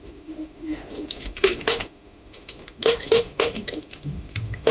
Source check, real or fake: fake